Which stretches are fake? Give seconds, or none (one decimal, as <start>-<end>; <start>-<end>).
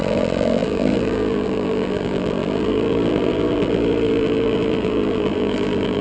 0.0-6.0